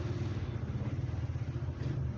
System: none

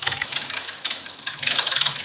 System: autoencoder, DAC-VAE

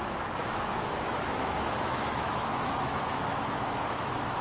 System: autoencoder, DAC-VAE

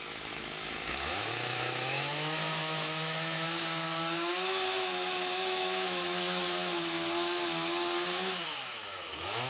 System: autoencoder, DAC-VAE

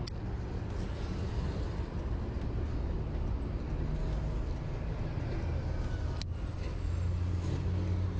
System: none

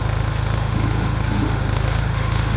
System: autoencoder, DAC-VAE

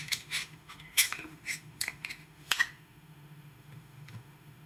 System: autoencoder, DAC-VAE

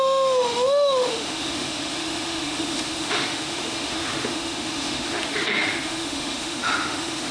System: autoencoder, DAC-VAE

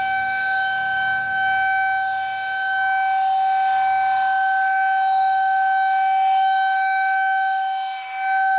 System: autoencoder, DAC-VAE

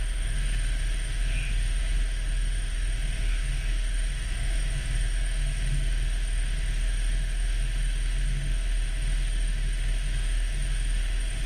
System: autoencoder, DAC-VAE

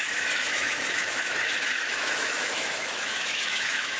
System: autoencoder, DAC-VAE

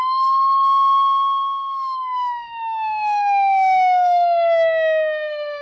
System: autoencoder, DAC-VAE